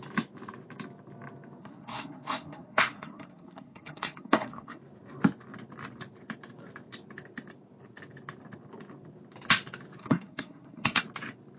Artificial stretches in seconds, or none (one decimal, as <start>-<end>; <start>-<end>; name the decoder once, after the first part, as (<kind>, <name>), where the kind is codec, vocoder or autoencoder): 1.6-4.8 (codec, SNAC); 10.0-11.0